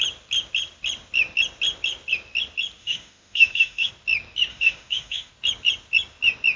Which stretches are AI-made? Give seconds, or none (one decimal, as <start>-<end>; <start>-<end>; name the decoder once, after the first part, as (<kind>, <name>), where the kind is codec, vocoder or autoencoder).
2.8-3.9 (autoencoder, DAC-VAE); 4.5-5.3